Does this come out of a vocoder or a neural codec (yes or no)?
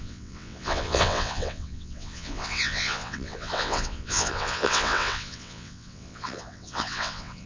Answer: yes